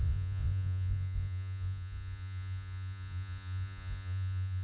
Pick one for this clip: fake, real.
fake